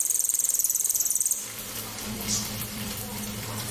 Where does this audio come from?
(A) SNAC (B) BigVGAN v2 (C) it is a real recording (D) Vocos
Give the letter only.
B